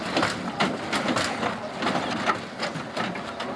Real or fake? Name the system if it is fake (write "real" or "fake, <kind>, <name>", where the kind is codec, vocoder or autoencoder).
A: real